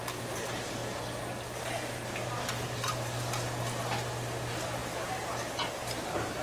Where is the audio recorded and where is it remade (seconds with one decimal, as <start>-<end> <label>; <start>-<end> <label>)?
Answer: 0.0-6.4 recorded